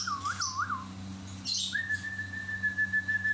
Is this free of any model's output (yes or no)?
yes